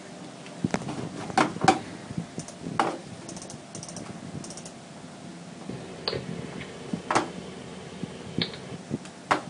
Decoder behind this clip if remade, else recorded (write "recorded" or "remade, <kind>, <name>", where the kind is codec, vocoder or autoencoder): recorded